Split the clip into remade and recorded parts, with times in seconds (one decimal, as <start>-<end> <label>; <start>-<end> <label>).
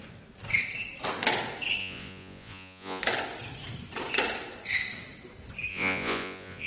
0.0-1.8 recorded; 1.8-3.0 remade; 3.0-5.7 recorded; 5.7-6.7 remade